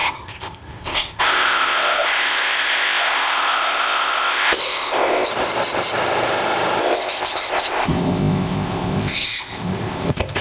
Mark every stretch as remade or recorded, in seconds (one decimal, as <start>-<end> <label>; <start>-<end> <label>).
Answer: 0.0-5.3 remade; 5.3-6.8 recorded; 6.8-10.4 remade